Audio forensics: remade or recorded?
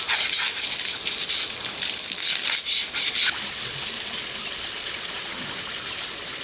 recorded